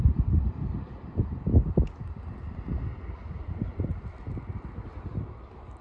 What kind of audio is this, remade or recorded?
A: recorded